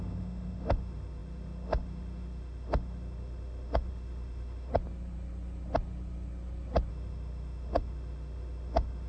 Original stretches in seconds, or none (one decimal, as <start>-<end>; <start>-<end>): 4.7-6.9